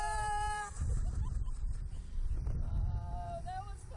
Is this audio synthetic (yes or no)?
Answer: yes